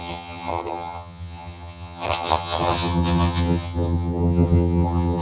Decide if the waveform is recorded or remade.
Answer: remade